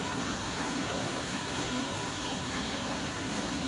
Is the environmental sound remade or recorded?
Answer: remade